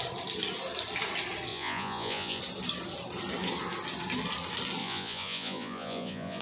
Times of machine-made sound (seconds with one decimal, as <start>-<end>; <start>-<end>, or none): 1.5-2.4; 4.8-6.4